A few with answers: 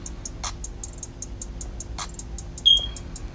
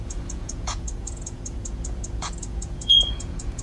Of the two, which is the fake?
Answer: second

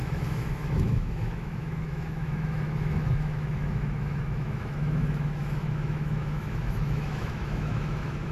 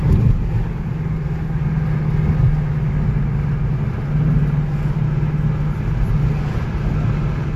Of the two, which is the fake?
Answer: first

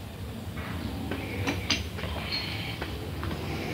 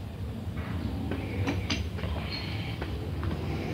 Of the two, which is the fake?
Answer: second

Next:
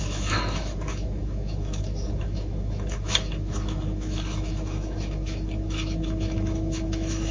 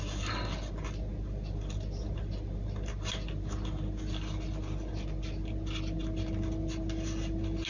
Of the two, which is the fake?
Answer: first